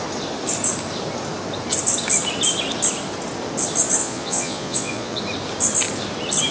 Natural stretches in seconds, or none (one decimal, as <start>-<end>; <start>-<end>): 0.0-4.0; 5.2-6.5